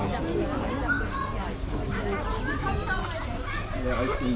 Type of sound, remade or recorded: recorded